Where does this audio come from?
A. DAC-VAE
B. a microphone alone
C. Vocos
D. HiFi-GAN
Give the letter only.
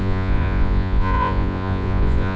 C